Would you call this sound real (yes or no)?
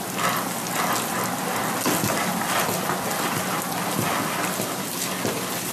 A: yes